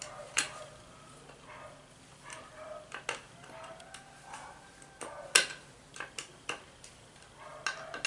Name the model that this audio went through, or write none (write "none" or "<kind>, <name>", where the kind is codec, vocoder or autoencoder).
none